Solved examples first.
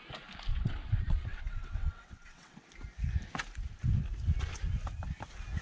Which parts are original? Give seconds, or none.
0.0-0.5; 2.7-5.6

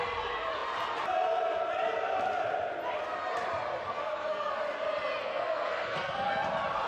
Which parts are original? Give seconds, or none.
0.0-3.9; 4.5-5.2; 6.3-6.9

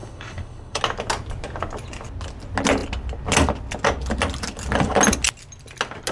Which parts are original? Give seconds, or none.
0.8-6.1

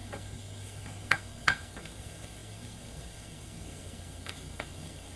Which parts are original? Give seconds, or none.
none

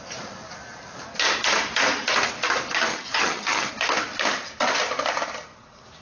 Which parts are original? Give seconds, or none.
0.0-2.9; 3.7-6.0

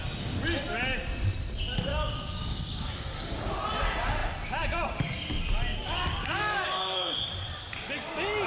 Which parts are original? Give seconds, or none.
0.0-1.9; 3.5-5.7; 7.2-8.5